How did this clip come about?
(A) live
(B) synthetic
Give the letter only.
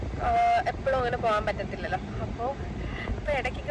A